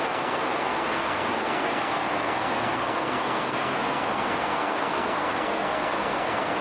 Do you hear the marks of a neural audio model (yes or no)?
yes